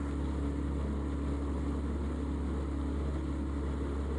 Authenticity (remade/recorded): recorded